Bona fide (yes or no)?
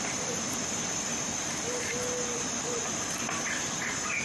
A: yes